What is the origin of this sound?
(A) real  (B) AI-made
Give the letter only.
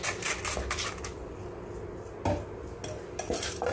A